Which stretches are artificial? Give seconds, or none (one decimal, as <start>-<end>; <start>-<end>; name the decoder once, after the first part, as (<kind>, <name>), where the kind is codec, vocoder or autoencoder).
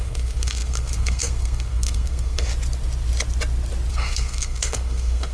0.0-2.5 (codec, SNAC); 3.9-5.3